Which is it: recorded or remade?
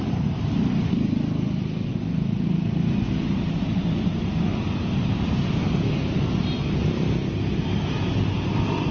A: recorded